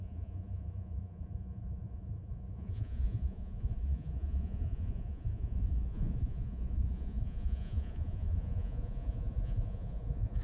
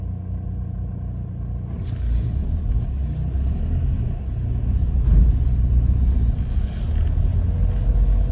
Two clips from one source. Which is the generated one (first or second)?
first